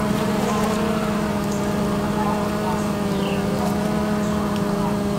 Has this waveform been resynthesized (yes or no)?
no